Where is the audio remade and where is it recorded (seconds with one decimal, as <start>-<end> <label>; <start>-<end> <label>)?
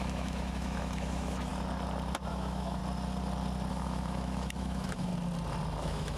0.0-1.5 remade; 1.5-2.3 recorded; 2.3-2.8 remade; 2.8-3.7 recorded; 3.7-5.1 remade; 5.1-5.8 recorded; 5.8-6.2 remade